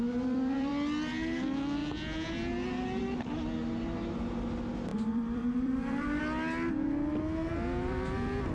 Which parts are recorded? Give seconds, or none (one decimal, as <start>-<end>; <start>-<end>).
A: 0.7-4.9; 6.2-8.5